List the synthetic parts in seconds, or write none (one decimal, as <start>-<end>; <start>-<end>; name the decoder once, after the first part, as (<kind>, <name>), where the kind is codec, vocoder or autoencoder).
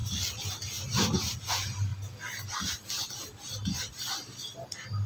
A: none